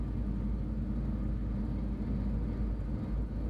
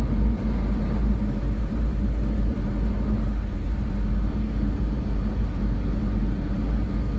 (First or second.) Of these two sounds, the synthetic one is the second